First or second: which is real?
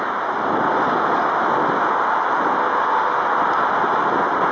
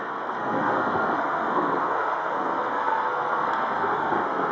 first